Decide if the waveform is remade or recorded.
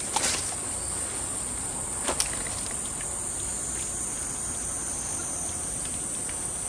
recorded